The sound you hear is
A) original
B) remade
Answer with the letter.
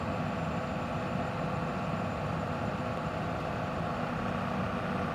A